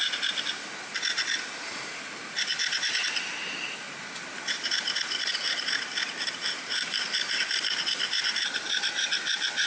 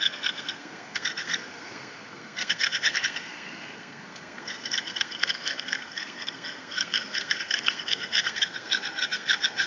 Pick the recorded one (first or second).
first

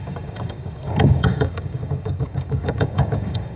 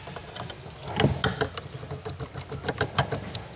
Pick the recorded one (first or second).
second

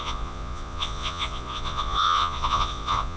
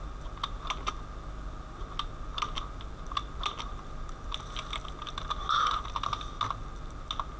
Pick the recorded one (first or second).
second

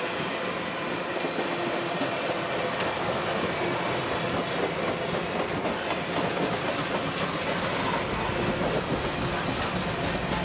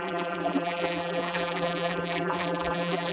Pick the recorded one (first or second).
first